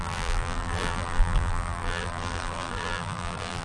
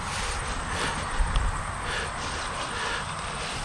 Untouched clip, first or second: second